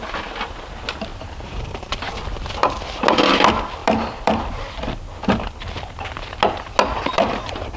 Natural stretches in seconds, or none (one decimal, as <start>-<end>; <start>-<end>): 0.0-1.1; 2.1-3.8; 4.8-7.1